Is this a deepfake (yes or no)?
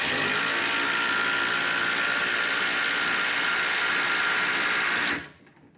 no